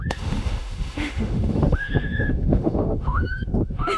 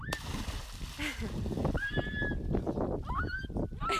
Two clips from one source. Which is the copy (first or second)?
first